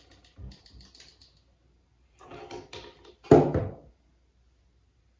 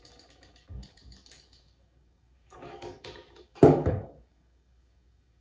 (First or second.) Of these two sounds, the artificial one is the second